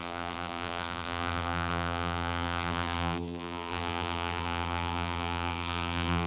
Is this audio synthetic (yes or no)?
yes